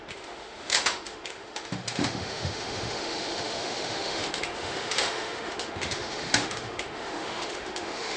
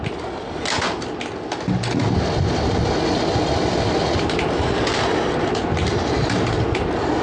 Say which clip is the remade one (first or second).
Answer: first